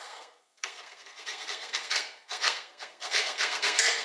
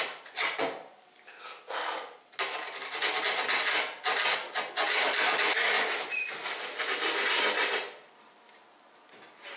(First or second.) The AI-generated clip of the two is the first